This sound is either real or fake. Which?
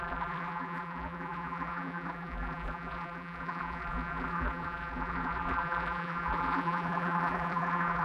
fake